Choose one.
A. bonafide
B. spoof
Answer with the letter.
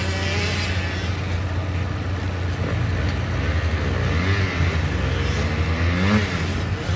A